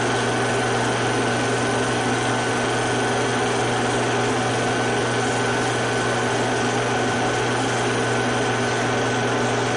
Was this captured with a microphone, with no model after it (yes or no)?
yes